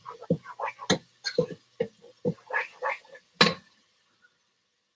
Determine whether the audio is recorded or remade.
recorded